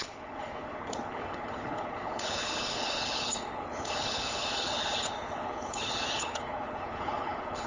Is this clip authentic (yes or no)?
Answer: no